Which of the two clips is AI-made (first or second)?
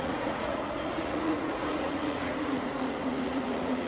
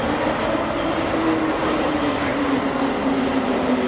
first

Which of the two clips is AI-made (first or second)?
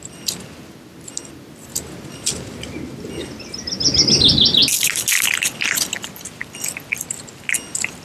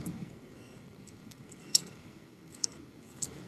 second